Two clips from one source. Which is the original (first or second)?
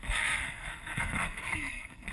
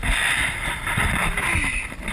second